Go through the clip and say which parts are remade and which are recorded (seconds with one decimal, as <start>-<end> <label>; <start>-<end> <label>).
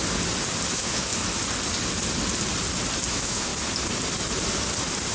0.0-0.7 recorded; 0.7-1.1 remade; 1.1-3.1 recorded; 3.1-3.5 remade; 3.5-5.1 recorded